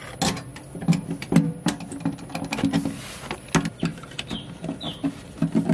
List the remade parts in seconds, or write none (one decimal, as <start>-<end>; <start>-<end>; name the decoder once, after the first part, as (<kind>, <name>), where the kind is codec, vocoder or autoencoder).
0.5-1.8 (vocoder, BigVGAN v2)